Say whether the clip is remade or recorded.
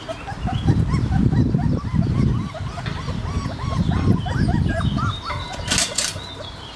recorded